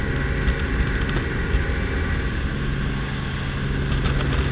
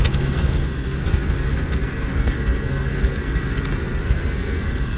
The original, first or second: first